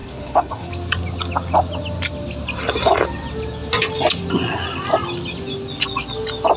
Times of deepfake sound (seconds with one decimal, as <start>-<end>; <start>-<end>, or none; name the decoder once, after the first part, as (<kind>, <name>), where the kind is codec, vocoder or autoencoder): 0.0-0.7 (codec, HILCodec)